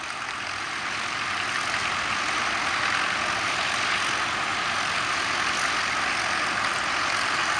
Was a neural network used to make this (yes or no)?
no